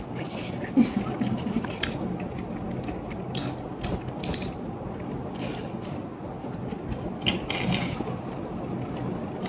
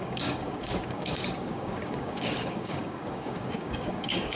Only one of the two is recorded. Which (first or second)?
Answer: first